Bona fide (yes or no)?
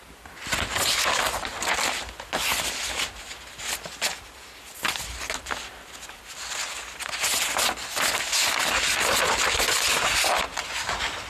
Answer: yes